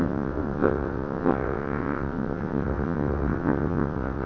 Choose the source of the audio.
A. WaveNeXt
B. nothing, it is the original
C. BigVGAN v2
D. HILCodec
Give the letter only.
A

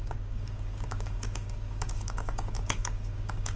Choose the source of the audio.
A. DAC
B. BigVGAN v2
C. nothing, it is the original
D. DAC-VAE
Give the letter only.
A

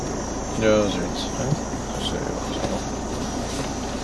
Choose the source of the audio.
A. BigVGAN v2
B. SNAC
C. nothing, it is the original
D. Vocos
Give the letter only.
C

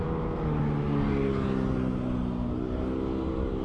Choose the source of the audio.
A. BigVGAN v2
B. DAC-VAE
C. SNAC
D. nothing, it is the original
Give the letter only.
D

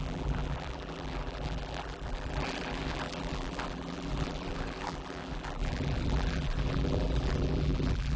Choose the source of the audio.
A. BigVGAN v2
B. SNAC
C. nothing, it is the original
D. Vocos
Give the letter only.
A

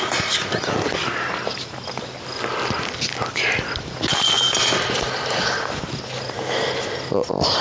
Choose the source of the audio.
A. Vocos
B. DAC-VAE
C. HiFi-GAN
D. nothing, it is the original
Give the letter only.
D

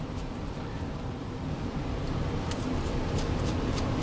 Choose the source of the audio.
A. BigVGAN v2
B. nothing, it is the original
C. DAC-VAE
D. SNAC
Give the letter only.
A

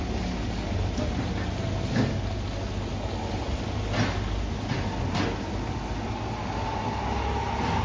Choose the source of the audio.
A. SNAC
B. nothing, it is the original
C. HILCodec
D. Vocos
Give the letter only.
B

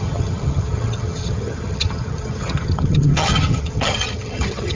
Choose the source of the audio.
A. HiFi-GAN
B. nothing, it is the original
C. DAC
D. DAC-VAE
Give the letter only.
A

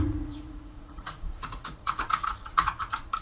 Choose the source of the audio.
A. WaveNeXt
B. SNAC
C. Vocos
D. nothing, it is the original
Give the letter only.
C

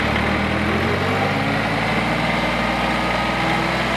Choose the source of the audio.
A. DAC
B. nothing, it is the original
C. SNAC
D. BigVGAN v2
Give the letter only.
B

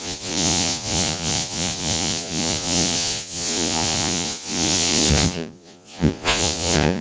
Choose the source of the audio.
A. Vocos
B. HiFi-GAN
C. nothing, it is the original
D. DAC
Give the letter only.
A